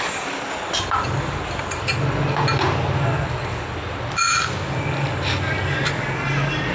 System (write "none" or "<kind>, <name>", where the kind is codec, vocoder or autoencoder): none